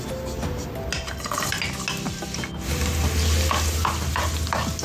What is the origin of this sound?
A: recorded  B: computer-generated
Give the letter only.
A